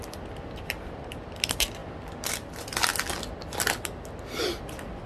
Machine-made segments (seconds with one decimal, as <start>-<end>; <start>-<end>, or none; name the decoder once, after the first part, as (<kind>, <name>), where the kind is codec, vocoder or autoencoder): none